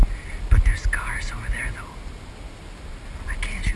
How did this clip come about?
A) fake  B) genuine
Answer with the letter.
B